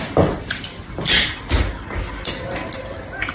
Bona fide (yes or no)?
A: yes